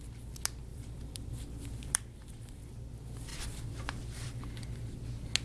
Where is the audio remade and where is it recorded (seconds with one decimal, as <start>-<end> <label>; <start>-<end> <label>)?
0.0-0.7 recorded; 0.7-2.7 remade; 2.7-3.3 recorded; 3.3-4.4 remade; 4.4-5.4 recorded